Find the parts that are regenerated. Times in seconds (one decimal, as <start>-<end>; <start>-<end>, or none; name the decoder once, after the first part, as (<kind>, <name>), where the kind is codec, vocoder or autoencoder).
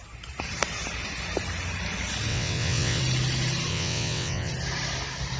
2.3-3.0 (vocoder, WaveNeXt); 3.7-4.5